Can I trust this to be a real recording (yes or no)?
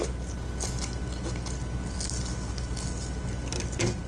yes